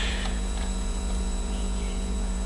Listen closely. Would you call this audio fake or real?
fake